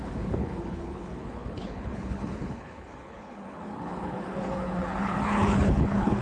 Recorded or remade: remade